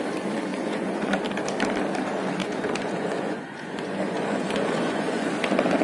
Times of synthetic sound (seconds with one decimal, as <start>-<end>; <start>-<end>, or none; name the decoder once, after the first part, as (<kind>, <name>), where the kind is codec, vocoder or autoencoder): 0.5-1.2 (vocoder, Vocos); 2.4-5.3